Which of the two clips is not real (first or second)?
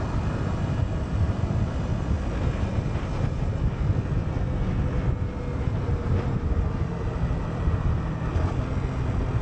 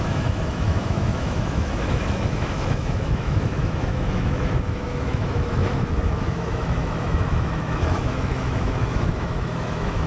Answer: second